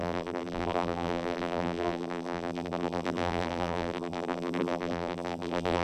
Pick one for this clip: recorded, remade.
remade